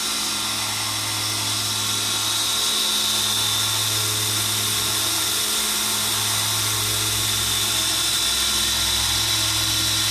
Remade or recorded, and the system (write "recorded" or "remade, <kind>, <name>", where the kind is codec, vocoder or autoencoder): recorded